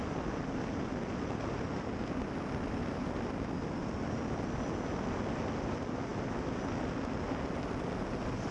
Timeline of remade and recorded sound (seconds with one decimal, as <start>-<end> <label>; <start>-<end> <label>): 0.0-8.5 recorded